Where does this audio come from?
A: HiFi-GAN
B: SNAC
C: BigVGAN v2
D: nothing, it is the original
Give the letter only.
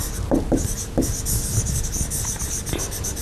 D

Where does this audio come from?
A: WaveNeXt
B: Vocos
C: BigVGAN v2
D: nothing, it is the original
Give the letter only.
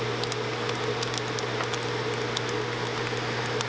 D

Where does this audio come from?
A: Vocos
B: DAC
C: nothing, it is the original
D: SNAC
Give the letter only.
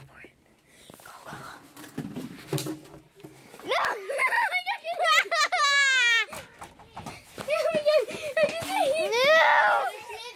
C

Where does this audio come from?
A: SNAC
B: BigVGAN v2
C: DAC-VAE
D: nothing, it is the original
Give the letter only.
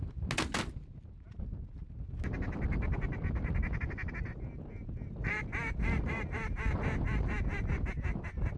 D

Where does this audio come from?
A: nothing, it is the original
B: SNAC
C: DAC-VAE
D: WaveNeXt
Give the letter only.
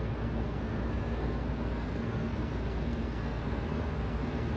B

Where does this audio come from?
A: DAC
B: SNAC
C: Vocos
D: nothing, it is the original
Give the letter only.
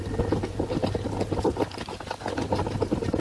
D